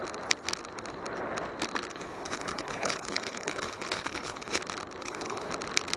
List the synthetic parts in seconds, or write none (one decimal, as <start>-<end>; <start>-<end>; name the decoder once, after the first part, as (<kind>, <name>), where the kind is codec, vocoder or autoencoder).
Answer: 1.9-4.6 (codec, HILCodec); 5.0-5.5